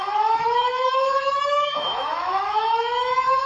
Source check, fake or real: fake